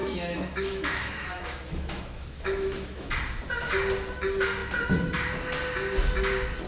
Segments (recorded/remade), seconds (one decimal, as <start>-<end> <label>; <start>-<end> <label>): 0.0-3.1 remade; 3.1-6.7 recorded

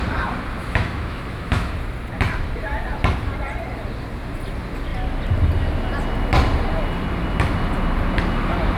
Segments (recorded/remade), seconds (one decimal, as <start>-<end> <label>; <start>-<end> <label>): 0.0-0.6 recorded; 0.6-1.7 remade; 1.7-8.8 recorded

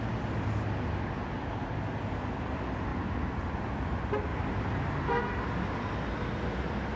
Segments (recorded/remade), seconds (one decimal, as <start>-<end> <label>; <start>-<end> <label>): 0.0-7.0 recorded

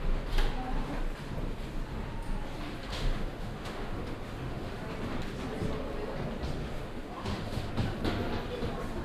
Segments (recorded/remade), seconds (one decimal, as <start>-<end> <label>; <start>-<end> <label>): 0.0-2.9 recorded; 2.9-4.7 remade; 4.7-6.6 recorded; 6.6-7.7 remade; 7.7-9.0 recorded

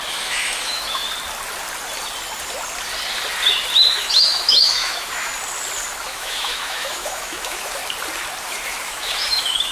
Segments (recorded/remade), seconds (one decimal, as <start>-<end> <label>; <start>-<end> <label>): 0.0-1.0 remade; 1.0-3.9 recorded; 3.9-5.3 remade; 5.3-6.0 recorded; 6.0-7.8 remade; 7.8-8.4 recorded; 8.4-9.7 remade